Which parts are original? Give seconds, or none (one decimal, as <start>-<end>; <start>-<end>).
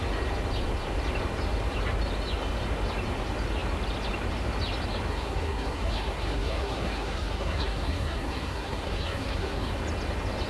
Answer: 0.0-5.1; 9.7-10.5